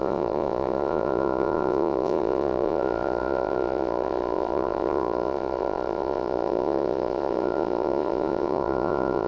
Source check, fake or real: fake